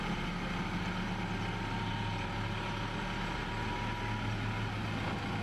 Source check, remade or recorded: recorded